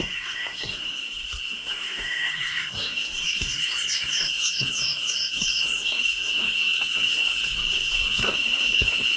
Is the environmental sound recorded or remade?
remade